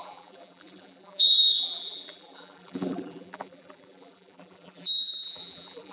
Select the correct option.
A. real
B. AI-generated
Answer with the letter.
B